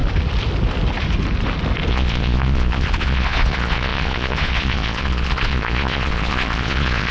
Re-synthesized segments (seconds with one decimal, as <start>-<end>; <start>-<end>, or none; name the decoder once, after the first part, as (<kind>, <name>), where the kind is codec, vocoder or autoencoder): 1.9-7.1 (vocoder, Vocos)